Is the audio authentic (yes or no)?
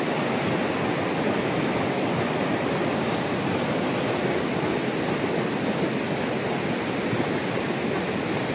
yes